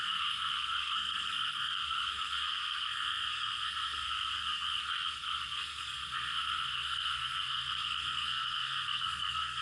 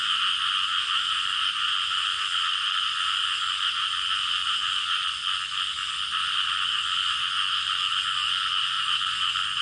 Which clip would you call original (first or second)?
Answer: second